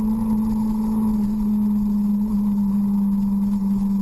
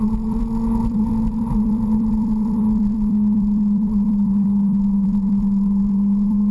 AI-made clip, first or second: second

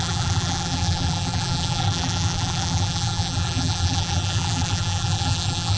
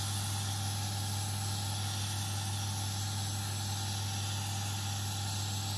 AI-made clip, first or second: first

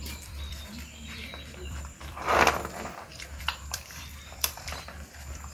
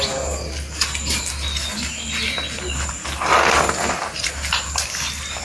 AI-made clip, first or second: first